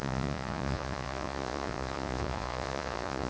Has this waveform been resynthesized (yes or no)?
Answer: yes